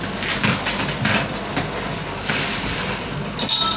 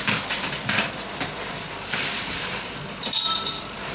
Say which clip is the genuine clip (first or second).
first